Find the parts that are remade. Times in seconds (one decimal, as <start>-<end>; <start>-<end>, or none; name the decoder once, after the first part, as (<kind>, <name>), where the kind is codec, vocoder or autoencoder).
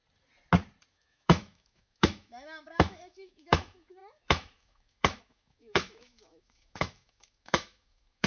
0.9-8.3 (autoencoder, DAC-VAE)